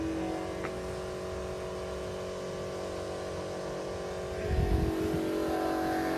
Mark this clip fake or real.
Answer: real